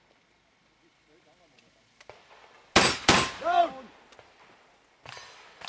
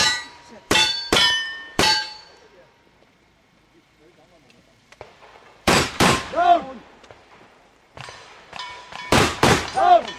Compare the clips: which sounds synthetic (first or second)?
second